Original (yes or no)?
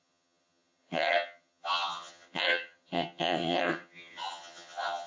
no